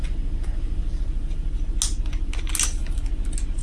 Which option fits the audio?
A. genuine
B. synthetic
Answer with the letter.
A